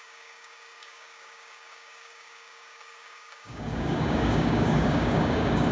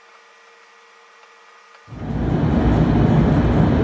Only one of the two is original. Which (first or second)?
second